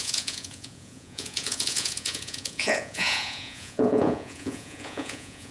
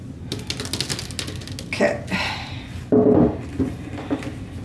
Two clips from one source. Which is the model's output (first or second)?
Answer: first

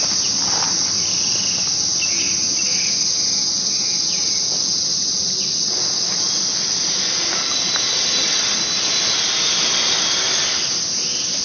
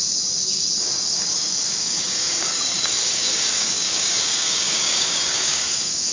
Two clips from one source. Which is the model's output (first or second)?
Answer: second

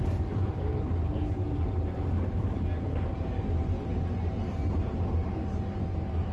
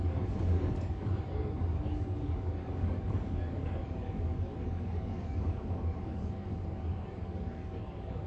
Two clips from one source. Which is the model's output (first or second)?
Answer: second